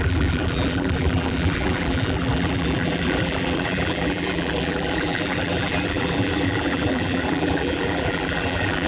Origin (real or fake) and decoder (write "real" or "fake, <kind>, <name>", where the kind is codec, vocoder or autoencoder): fake, vocoder, BigVGAN v2